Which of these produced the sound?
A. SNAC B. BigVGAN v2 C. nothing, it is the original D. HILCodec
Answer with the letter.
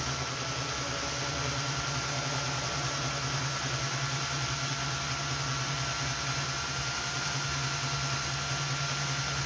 C